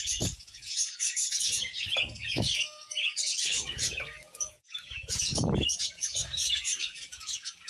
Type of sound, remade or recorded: remade